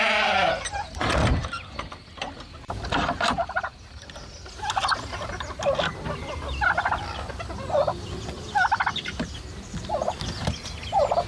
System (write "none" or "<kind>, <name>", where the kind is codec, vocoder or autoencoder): none